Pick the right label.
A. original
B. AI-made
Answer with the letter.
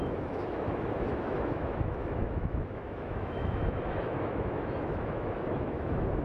B